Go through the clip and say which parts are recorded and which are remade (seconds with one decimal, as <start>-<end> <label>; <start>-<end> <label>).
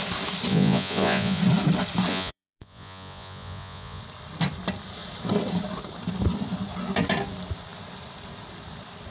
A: 0.0-0.5 recorded; 0.5-1.4 remade; 1.4-2.1 recorded; 2.1-4.0 remade; 4.0-9.1 recorded